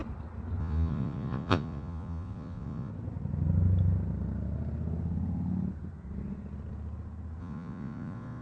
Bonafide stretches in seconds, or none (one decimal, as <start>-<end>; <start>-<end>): 0.0-0.6; 2.9-7.4